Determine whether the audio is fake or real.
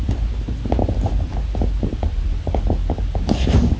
real